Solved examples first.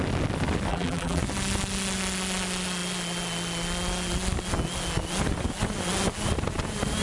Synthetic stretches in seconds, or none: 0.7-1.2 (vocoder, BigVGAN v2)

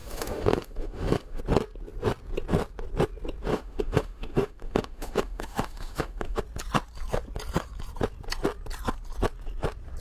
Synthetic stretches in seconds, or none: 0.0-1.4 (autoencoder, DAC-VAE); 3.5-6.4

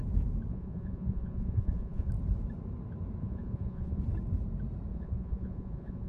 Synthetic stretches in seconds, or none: 0.5-2.1 (vocoder, Vocos); 3.2-4.0; 4.9-6.1